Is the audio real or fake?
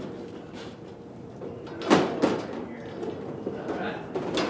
fake